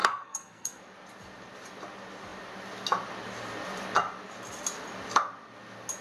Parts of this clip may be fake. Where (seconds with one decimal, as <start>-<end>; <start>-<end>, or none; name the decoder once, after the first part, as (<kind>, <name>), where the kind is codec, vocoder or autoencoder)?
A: 0.0-0.8 (codec, SNAC)